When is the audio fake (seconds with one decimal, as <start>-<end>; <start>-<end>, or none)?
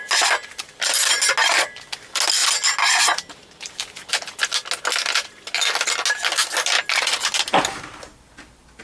none